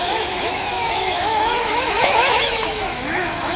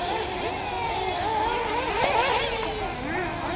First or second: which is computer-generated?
first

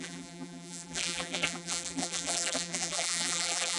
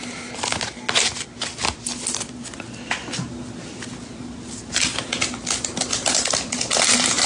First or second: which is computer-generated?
first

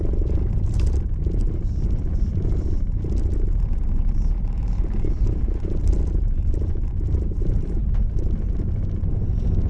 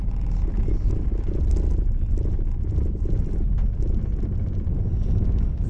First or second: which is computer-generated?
first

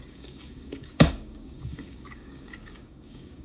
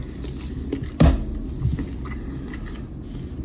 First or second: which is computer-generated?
first